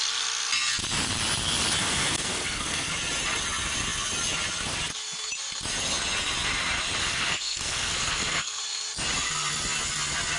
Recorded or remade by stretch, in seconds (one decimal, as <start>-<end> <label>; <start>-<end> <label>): 0.0-1.8 recorded; 1.8-2.9 remade; 2.9-7.0 recorded; 7.0-8.6 remade; 8.6-10.4 recorded